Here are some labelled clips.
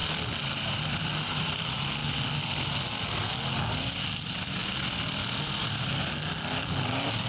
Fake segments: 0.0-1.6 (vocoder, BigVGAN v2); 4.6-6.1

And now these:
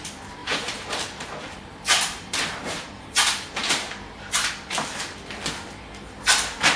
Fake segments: 0.4-4.5 (vocoder, BigVGAN v2)

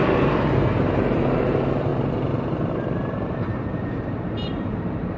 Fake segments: 0.0-1.9 (vocoder, BigVGAN v2); 2.7-5.2